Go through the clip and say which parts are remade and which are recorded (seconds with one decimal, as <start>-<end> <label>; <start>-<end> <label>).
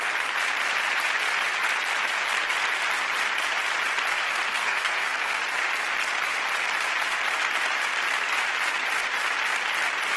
0.0-4.5 recorded; 4.5-5.4 remade; 5.4-10.2 recorded